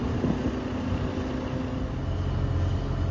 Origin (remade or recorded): recorded